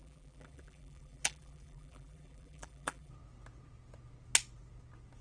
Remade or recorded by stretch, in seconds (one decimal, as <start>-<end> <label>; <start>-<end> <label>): 0.0-3.1 remade; 3.1-5.2 recorded